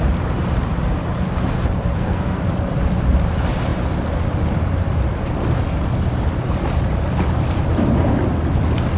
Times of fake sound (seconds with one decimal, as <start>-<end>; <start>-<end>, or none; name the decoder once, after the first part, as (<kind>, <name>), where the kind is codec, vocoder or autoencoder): 1.9-2.4 (codec, SNAC)